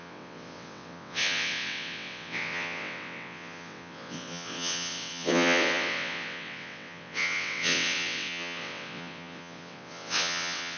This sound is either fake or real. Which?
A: fake